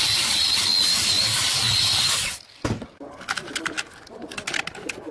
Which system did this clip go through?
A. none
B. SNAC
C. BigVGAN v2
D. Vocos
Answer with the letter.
A